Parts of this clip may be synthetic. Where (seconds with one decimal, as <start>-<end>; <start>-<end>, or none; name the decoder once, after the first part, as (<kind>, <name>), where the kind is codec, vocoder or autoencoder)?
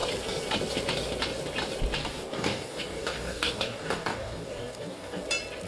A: 2.0-5.2 (codec, DAC)